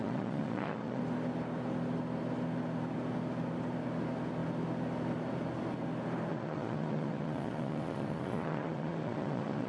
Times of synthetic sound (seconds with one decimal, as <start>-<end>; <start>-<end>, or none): 0.0-1.0; 6.3-9.7